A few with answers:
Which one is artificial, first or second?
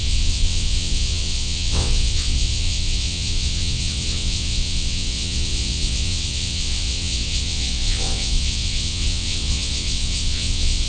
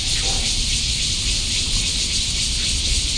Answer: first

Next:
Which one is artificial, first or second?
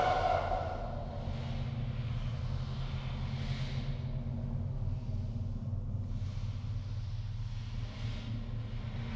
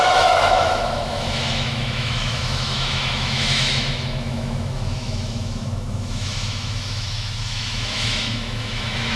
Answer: second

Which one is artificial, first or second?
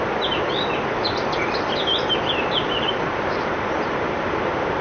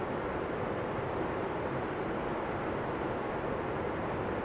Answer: first